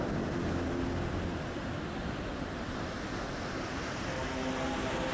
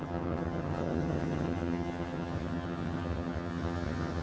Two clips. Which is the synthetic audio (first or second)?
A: second